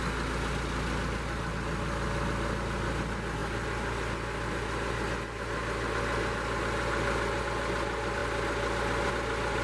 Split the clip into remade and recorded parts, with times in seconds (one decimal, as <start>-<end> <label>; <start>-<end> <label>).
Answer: 0.0-9.6 recorded